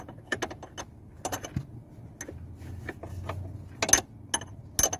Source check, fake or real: real